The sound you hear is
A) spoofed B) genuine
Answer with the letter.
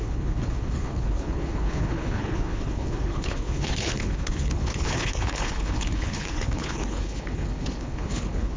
A